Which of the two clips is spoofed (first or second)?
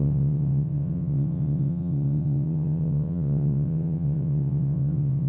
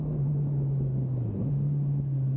first